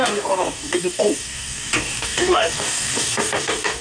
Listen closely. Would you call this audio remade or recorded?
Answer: remade